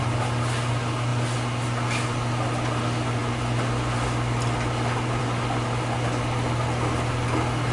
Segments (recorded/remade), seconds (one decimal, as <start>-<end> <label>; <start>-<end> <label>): 0.0-7.7 recorded